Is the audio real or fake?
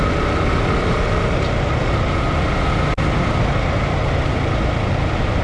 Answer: real